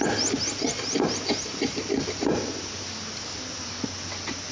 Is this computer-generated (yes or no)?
no